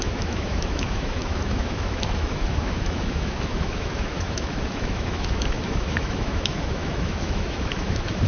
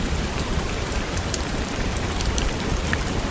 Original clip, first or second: second